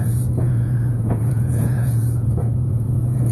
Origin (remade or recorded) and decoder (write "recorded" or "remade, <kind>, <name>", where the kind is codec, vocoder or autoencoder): remade, vocoder, Vocos